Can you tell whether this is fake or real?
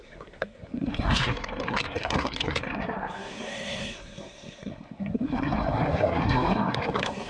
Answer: fake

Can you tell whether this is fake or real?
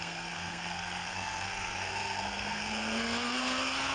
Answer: fake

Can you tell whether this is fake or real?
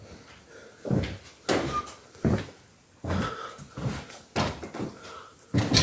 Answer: real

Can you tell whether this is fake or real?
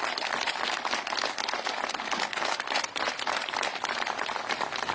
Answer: real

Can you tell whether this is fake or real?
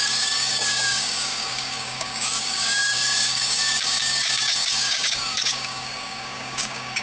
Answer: fake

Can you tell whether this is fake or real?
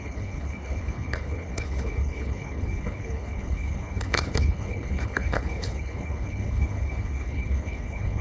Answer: fake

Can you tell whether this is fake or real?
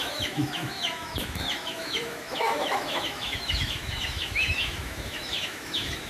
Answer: fake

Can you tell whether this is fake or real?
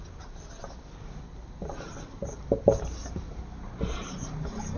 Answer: real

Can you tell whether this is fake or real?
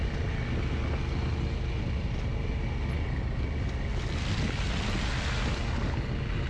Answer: real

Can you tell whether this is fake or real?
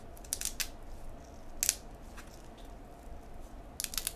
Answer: real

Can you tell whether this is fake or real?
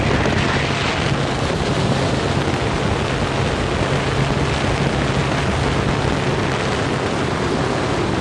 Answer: real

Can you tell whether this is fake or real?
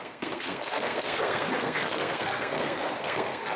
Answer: fake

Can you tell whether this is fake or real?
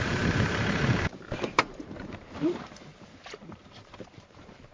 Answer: fake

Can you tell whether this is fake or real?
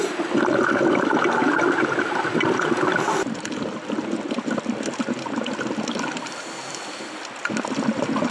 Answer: real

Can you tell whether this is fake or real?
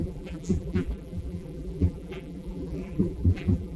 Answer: fake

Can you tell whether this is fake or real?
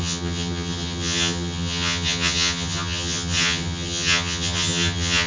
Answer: fake